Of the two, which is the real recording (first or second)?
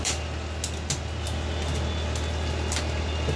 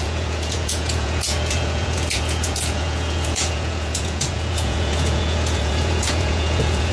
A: first